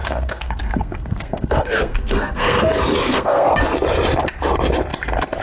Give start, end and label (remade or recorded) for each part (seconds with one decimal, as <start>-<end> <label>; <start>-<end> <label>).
0.0-2.6 remade; 2.6-3.0 recorded; 3.0-3.5 remade; 3.5-5.4 recorded